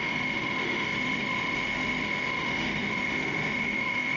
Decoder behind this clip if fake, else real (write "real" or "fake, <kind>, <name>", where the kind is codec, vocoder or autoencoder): fake, autoencoder, DAC-VAE